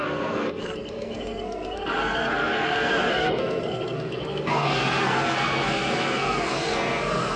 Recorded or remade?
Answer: remade